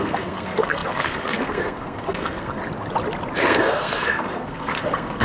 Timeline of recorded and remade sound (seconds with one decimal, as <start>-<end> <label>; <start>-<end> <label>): 0.0-2.6 remade; 2.6-3.4 recorded; 3.4-5.2 remade